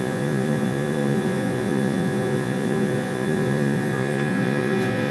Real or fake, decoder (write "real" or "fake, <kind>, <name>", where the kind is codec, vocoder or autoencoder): fake, vocoder, Vocos